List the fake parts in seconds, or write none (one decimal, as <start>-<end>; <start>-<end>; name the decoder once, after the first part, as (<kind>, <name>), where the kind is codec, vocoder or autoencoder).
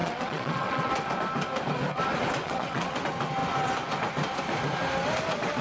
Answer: 0.0-0.9 (vocoder, WaveNeXt); 2.4-3.0